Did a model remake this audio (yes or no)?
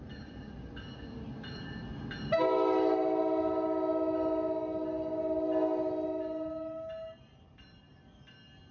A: no